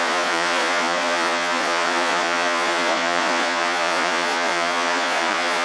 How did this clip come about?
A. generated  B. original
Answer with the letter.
A